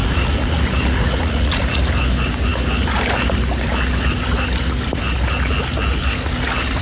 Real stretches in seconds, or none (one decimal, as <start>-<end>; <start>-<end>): 1.8-6.8